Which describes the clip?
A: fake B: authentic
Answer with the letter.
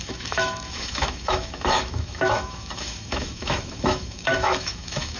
A